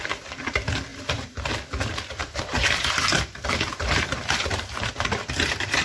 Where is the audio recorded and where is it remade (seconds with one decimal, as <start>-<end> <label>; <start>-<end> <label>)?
0.0-0.9 recorded; 0.9-1.4 remade; 1.4-2.2 recorded; 2.2-5.8 remade